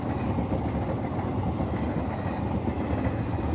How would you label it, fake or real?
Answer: real